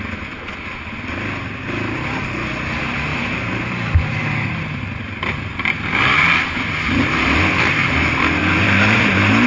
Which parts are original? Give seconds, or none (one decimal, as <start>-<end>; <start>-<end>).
0.0-3.1; 7.4-8.4; 9.0-9.5

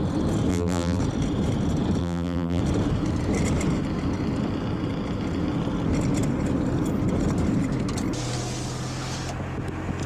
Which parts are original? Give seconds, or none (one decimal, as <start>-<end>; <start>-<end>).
0.0-0.5; 1.0-2.0; 2.6-10.1

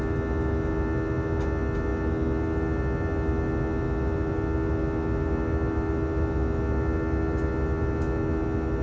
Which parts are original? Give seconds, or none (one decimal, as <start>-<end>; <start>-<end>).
0.0-8.8

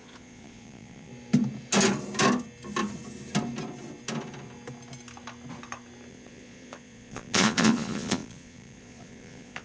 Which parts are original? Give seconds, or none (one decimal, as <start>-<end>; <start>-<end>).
1.1-6.1

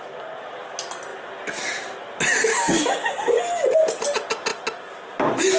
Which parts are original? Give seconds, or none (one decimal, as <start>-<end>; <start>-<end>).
0.0-2.5; 3.4-5.6